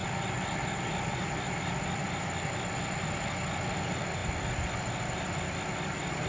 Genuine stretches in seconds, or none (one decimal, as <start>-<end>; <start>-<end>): 0.0-6.3